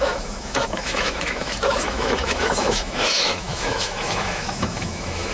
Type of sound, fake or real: fake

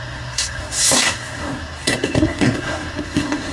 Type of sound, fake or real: fake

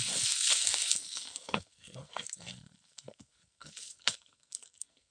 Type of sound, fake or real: fake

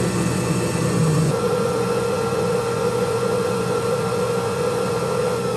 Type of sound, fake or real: fake